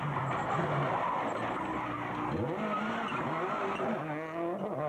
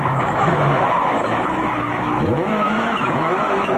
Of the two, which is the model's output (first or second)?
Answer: second